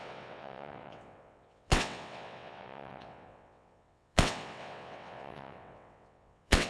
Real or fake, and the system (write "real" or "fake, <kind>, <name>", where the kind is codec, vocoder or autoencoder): fake, vocoder, WaveNeXt